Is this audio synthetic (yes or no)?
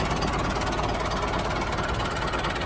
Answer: no